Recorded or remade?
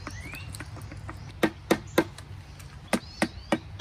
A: recorded